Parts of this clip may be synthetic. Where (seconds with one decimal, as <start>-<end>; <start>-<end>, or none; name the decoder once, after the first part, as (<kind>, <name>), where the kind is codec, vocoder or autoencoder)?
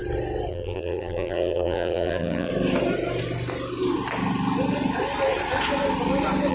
0.5-2.5 (vocoder, BigVGAN v2)